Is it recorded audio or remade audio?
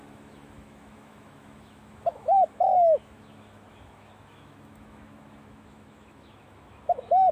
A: remade